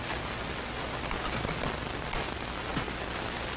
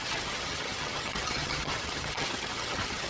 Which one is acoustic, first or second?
first